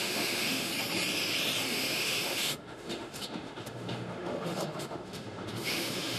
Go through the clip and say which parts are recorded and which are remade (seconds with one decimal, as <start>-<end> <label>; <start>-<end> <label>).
0.0-0.7 remade; 0.7-1.7 recorded; 1.7-6.2 remade